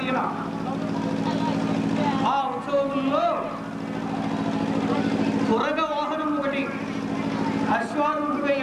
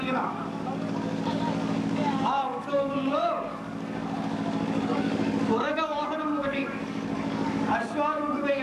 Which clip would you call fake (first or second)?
second